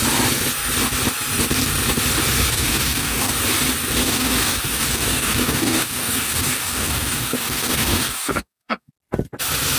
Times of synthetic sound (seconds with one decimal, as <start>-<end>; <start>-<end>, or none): 2.5-3.3; 4.0-8.9